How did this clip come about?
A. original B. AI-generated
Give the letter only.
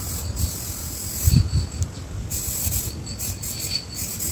A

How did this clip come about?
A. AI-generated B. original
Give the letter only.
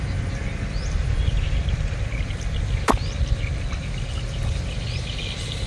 B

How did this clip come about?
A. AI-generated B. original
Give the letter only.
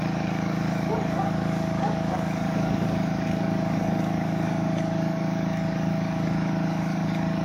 A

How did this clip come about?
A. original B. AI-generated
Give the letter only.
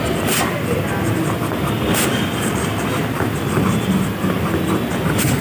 B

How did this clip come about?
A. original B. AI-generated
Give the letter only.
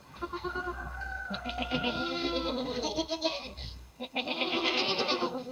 B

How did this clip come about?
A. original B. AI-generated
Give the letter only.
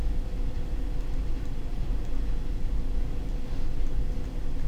A